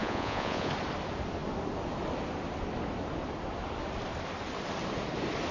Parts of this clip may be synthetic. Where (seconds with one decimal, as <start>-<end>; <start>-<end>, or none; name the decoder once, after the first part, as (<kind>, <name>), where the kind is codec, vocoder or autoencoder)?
0.0-0.7 (vocoder, Vocos)